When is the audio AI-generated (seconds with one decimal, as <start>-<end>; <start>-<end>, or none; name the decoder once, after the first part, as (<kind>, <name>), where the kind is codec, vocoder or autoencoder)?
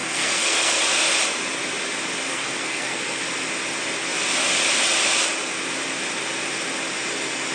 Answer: 0.0-0.8 (codec, SNAC); 2.3-3.2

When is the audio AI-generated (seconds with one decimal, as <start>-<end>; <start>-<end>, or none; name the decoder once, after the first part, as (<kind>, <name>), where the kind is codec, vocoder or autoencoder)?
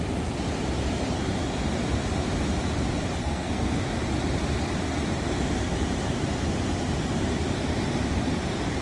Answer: 3.2-3.8 (codec, SNAC)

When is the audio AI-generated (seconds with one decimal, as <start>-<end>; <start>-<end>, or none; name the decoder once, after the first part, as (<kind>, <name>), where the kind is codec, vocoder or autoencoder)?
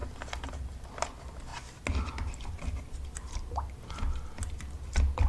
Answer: none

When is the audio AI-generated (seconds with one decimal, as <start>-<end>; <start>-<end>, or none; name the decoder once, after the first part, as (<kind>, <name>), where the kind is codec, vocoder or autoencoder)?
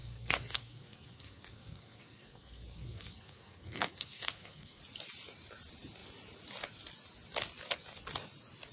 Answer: 0.0-4.8 (codec, SNAC)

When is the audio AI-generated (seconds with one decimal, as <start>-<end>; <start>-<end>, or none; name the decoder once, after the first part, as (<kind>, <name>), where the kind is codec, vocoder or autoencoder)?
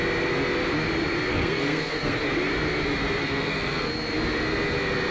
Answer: 1.3-2.2 (codec, SNAC); 3.2-3.9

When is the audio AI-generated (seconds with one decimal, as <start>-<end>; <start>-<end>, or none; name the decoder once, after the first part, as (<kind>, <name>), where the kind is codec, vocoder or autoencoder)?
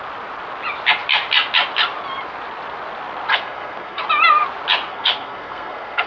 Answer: 3.3-4.0 (codec, SNAC); 4.9-6.1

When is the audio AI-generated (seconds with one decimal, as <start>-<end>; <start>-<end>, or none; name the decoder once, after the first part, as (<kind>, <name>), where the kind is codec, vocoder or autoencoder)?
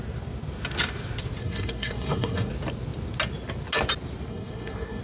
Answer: 1.4-2.5 (codec, SNAC); 4.3-5.0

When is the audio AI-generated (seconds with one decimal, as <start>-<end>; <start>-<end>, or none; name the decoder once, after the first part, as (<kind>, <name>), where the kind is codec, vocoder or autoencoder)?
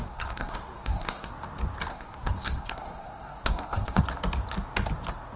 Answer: 0.0-1.3 (codec, SNAC); 1.9-4.0